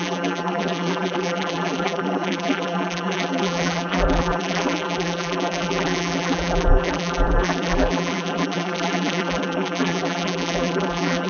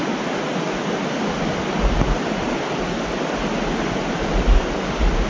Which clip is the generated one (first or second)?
first